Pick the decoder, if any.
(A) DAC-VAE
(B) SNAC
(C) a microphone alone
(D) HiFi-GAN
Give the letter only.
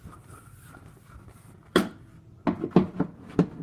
C